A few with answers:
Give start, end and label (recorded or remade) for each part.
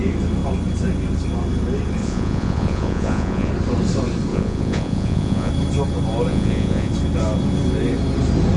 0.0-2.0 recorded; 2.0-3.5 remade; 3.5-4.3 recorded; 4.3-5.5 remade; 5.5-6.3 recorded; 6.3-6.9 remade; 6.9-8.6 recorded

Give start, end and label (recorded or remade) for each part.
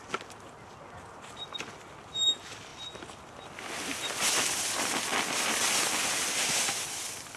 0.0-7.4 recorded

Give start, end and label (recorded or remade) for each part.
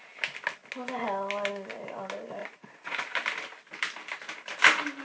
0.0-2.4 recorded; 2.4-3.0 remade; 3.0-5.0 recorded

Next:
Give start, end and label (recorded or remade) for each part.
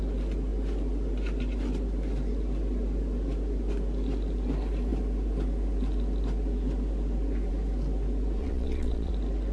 0.0-8.4 recorded; 8.4-9.1 remade; 9.1-9.5 recorded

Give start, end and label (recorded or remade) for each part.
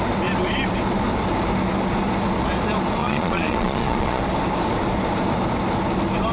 0.0-3.0 recorded; 3.0-4.2 remade; 4.2-6.3 recorded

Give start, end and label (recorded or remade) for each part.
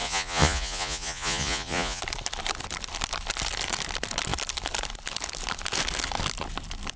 0.0-2.0 remade; 2.0-7.0 recorded